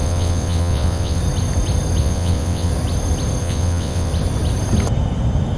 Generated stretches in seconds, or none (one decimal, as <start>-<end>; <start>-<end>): 0.0-1.2; 2.0-2.7; 3.4-4.1